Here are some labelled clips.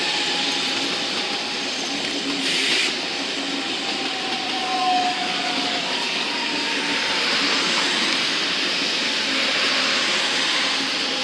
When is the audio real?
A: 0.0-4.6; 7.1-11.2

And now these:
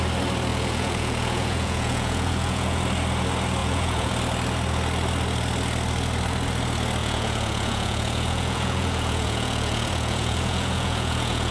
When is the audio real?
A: 0.0-0.5; 2.8-3.6; 4.1-7.0

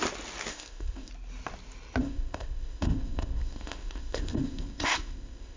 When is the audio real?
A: 0.0-0.5; 1.1-2.0

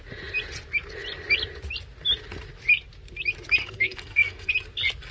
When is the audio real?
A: 0.0-3.6; 4.5-5.1

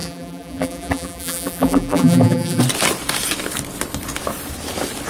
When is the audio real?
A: 2.6-5.1

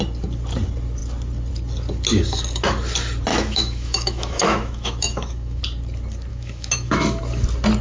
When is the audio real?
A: 0.0-3.3; 5.6-6.3; 7.2-7.8

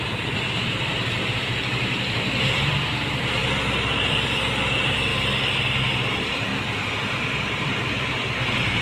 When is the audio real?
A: 3.4-4.0; 5.1-5.9; 6.5-7.2